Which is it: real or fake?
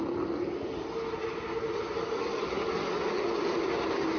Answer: real